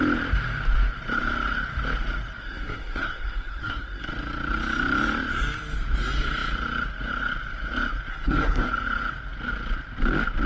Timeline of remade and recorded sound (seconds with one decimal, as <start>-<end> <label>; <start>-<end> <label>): 0.0-2.4 recorded; 2.4-4.1 remade; 4.1-8.1 recorded; 8.1-8.7 remade; 8.7-10.5 recorded